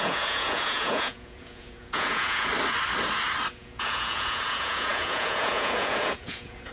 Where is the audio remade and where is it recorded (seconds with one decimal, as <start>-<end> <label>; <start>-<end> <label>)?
0.0-2.5 remade; 2.5-3.5 recorded; 3.5-6.7 remade